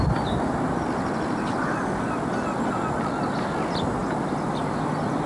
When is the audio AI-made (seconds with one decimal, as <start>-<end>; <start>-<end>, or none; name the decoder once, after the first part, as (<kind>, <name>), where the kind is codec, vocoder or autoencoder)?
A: none

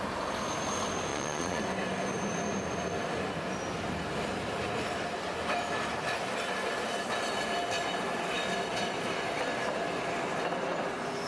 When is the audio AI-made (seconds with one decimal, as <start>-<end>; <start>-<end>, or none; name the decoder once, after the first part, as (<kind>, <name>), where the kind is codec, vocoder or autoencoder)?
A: 1.1-1.6 (vocoder, Vocos)

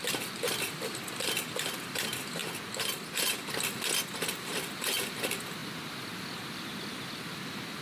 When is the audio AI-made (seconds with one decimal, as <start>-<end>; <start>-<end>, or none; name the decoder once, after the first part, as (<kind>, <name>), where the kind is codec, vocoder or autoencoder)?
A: 0.0-2.4 (vocoder, BigVGAN v2); 4.1-5.6

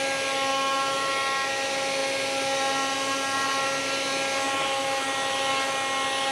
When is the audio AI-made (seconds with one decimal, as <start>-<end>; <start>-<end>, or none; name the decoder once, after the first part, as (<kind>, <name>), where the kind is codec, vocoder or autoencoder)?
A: 0.5-1.1 (autoencoder, DAC-VAE)

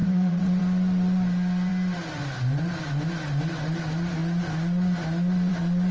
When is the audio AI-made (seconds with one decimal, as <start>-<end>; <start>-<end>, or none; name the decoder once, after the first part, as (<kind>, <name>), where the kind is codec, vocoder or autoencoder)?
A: 0.0-0.6 (vocoder, WaveNeXt)

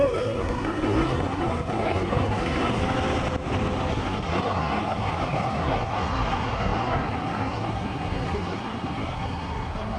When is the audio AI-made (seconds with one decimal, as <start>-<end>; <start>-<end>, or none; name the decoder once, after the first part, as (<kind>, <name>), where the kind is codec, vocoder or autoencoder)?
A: 0.0-2.8 (codec, SNAC); 3.9-10.0